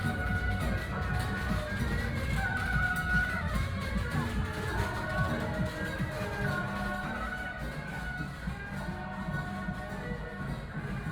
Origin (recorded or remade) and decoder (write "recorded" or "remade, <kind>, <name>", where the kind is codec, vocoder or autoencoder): recorded